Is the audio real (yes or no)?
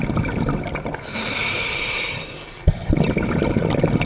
yes